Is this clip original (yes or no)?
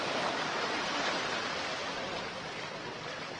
no